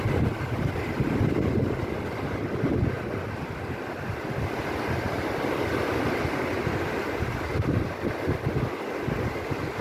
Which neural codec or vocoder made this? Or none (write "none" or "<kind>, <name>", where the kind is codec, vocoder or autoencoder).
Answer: none